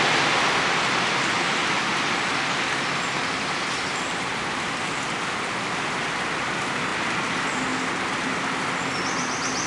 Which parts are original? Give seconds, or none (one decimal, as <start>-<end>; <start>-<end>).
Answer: 0.0-9.7